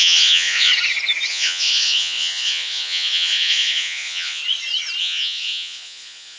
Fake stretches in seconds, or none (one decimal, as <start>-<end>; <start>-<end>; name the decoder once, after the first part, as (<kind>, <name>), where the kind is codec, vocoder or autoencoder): 0.0-0.7 (vocoder, Vocos); 1.3-4.4; 5.0-6.4